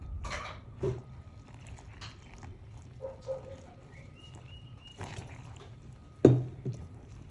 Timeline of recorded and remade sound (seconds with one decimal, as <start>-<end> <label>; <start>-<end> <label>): 0.0-0.6 recorded; 0.6-1.0 remade; 1.0-3.9 recorded; 3.9-6.0 remade; 6.0-6.7 recorded; 6.7-7.3 remade